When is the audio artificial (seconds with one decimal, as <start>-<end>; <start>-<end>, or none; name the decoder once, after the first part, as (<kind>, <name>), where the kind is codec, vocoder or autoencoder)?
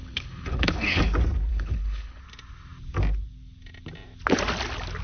0.0-1.0 (codec, HILCodec); 1.5-2.2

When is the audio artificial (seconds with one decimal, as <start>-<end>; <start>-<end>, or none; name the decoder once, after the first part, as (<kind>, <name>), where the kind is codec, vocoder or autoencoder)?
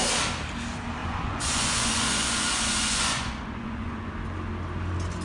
1.0-4.1 (vocoder, Vocos)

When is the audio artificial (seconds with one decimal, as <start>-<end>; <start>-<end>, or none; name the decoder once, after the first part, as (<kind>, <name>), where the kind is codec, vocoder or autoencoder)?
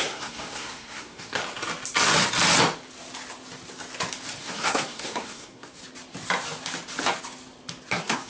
0.0-1.4 (codec, SNAC); 4.4-5.8; 7.9-8.3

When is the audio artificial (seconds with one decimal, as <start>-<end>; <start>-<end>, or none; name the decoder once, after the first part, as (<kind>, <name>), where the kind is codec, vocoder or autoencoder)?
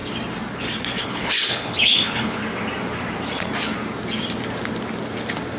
1.0-2.4 (codec, HILCodec)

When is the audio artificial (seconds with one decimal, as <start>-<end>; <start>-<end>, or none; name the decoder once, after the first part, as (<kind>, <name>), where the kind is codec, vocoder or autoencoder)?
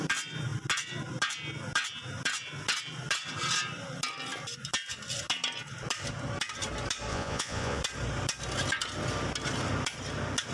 7.1-7.8 (vocoder, Vocos)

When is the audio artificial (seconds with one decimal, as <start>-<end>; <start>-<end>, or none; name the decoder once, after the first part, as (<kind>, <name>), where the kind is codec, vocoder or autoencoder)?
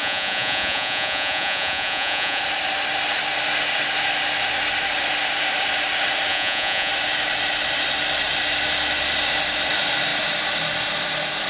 0.0-2.4 (vocoder, Vocos); 6.3-6.9